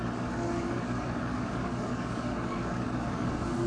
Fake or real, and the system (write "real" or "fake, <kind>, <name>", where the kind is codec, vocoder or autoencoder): fake, codec, DAC